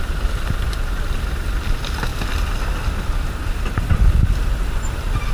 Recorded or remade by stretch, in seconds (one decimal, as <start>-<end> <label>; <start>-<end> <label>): 0.0-5.3 recorded